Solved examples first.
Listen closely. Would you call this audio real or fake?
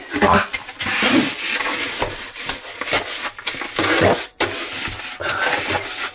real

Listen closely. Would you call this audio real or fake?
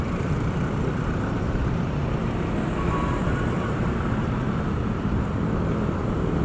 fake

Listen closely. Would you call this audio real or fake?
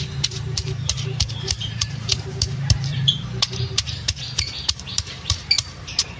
fake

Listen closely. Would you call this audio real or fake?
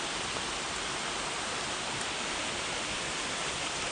real